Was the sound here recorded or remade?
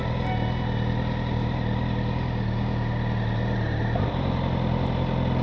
recorded